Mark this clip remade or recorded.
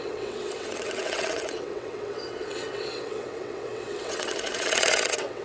remade